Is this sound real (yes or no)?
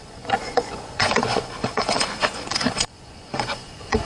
no